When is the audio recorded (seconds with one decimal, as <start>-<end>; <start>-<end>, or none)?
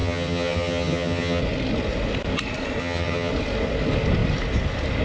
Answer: 1.4-2.8; 3.3-5.0